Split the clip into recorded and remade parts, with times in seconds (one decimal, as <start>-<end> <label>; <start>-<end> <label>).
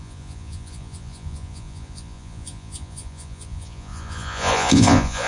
0.0-5.3 remade